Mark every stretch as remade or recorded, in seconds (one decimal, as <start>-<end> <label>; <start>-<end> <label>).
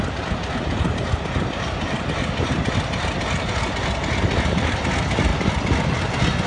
0.0-6.5 recorded